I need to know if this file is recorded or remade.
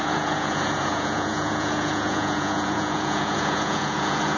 remade